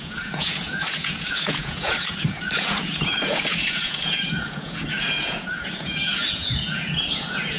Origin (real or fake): fake